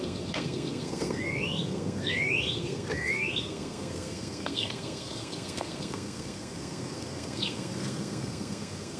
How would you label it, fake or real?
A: fake